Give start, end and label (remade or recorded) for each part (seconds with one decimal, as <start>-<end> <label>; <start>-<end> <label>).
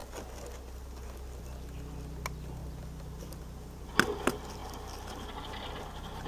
0.0-6.3 recorded